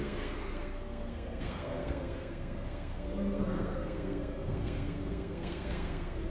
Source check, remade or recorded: remade